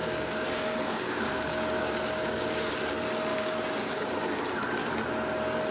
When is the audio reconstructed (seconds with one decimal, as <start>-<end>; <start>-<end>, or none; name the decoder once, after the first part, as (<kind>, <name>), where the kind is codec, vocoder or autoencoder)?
0.0-2.7 (codec, DAC); 3.3-4.3